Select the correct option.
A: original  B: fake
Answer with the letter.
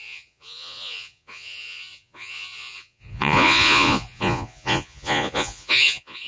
B